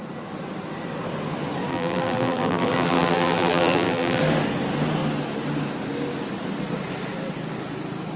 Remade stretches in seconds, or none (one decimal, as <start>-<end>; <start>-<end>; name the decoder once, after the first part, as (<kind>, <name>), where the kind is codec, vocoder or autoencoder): 1.7-4.2 (vocoder, BigVGAN v2)